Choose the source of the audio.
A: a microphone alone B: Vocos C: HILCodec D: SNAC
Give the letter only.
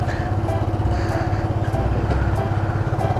A